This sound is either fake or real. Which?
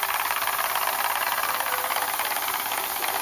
fake